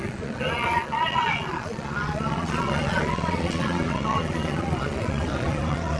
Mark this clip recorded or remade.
remade